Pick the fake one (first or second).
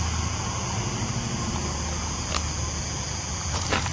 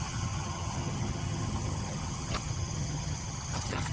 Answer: second